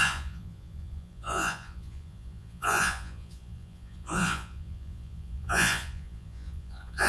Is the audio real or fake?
fake